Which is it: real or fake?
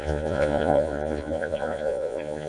fake